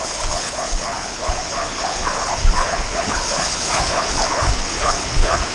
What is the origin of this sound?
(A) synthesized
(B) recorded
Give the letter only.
A